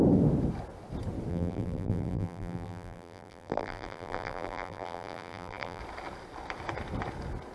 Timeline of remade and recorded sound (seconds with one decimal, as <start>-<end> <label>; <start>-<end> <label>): 0.0-1.3 recorded; 1.3-5.8 remade; 5.8-7.5 recorded